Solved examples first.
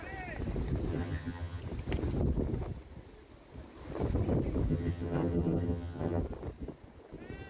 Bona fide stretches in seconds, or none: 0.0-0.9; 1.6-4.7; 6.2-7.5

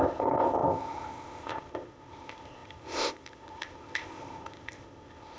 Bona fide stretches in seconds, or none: none

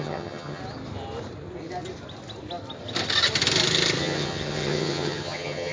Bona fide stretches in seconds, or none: 0.6-4.0